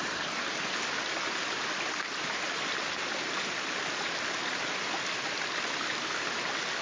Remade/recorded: recorded